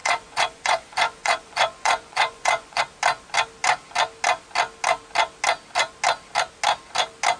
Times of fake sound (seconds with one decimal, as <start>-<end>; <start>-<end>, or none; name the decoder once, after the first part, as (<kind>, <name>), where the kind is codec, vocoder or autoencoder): 0.0-2.8 (vocoder, Vocos)